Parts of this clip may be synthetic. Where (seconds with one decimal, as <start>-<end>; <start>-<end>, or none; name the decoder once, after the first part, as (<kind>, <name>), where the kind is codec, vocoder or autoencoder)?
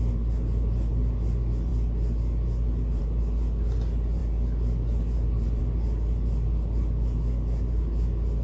none